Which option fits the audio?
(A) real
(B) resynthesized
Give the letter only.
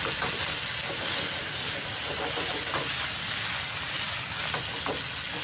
A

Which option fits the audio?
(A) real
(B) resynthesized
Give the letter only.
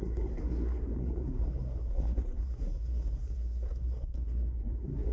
B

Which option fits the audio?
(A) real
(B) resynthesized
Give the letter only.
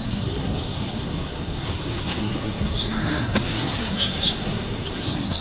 B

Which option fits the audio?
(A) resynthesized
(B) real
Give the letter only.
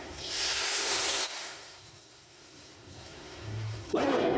A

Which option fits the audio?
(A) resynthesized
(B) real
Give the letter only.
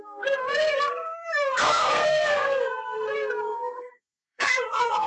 A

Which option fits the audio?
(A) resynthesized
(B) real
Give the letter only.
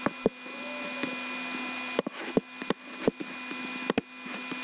B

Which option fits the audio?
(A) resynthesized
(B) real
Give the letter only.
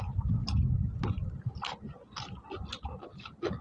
B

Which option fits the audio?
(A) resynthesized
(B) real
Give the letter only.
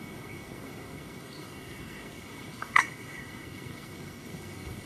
A